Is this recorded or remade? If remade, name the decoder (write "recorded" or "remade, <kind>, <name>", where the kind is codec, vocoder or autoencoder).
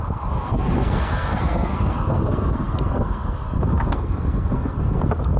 remade, codec, SNAC